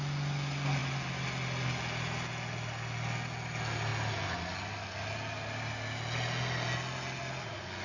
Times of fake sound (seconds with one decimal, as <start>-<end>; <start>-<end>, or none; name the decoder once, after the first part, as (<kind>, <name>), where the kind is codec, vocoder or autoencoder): none